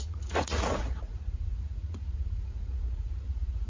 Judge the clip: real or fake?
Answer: fake